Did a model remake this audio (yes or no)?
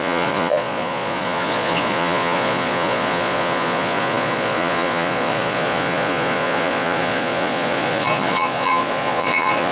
yes